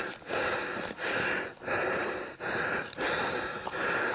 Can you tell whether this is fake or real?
real